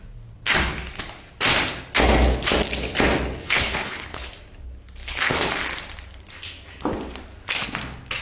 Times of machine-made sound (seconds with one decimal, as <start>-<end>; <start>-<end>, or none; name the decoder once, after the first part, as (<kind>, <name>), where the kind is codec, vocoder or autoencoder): 3.4-4.3 (codec, HILCodec); 5.0-5.5